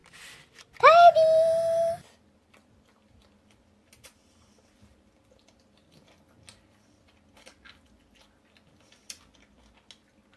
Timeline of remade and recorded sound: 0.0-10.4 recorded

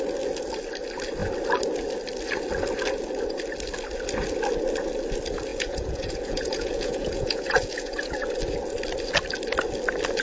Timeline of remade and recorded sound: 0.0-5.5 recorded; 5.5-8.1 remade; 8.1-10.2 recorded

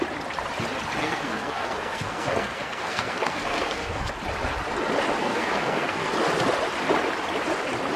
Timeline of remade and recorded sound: 0.0-1.0 recorded; 1.0-4.1 remade; 4.1-5.2 recorded; 5.2-6.1 remade; 6.1-8.0 recorded

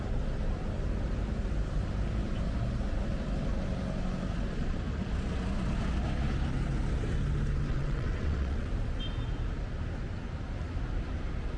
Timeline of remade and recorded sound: 0.0-7.7 recorded; 7.7-8.7 remade; 8.7-11.6 recorded

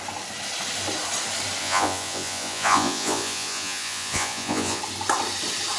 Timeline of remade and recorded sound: 0.0-1.6 recorded; 1.6-4.8 remade; 4.8-5.8 recorded

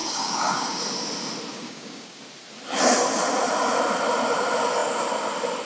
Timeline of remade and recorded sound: 0.0-0.8 remade; 0.8-1.5 recorded; 1.5-2.2 remade; 2.2-5.7 recorded